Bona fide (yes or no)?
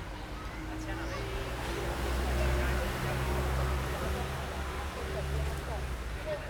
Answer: yes